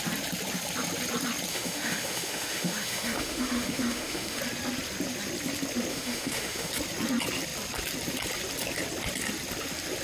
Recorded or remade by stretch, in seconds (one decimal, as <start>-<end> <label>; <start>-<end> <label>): 0.0-1.5 recorded; 1.5-4.4 remade; 4.4-5.9 recorded; 5.9-6.7 remade; 6.7-10.0 recorded